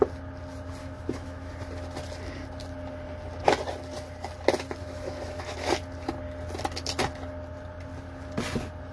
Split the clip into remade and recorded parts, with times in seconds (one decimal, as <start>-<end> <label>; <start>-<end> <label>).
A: 0.0-0.8 recorded; 0.8-1.5 remade; 1.5-4.8 recorded; 4.8-5.7 remade; 5.7-8.9 recorded